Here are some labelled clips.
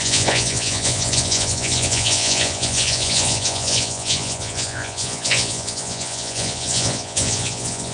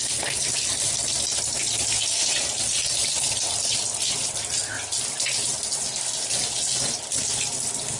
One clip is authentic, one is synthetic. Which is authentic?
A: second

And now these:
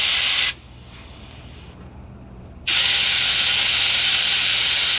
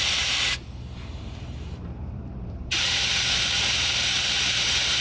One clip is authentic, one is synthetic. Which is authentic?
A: first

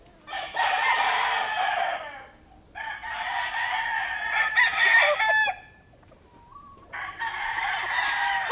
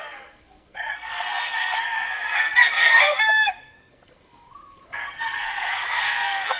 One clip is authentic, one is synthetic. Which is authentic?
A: first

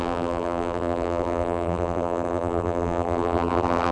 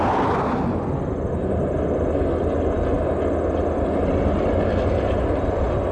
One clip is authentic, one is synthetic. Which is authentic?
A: second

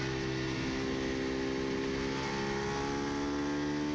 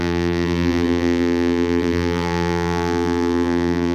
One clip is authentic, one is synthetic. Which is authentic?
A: first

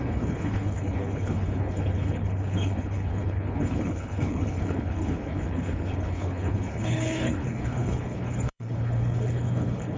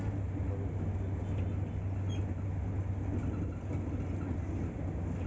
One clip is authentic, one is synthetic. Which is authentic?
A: second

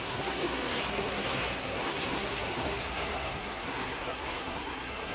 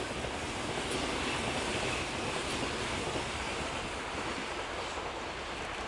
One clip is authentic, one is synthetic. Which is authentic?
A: second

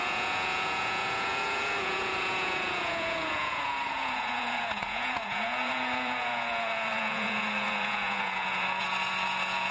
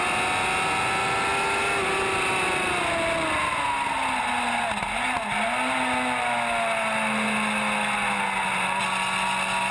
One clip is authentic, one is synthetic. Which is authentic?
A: second